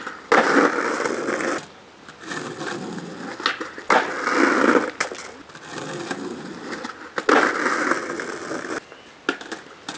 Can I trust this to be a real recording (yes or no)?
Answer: yes